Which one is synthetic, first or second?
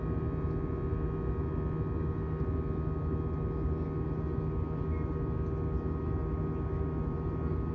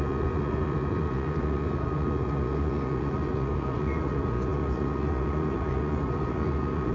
second